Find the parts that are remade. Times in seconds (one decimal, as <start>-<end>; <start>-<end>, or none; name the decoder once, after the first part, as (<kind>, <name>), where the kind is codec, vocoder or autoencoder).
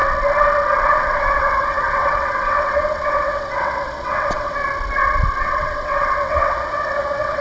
0.9-4.6 (vocoder, WaveNeXt); 5.4-7.4